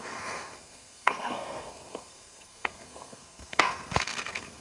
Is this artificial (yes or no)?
yes